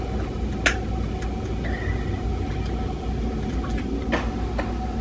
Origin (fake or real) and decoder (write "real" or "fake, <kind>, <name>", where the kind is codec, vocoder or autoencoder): real